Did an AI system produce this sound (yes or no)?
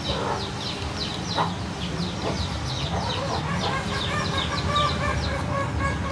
no